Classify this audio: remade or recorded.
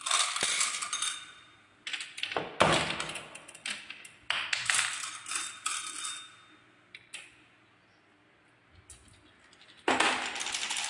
recorded